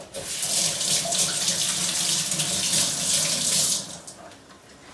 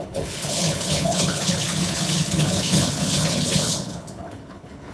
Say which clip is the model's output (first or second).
second